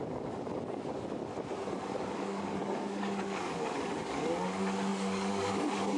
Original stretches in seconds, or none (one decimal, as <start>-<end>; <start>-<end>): 1.2-1.8